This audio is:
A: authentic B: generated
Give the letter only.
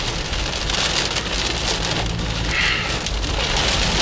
A